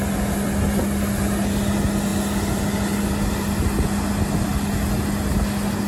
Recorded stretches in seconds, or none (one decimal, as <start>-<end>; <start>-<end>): 0.0-5.9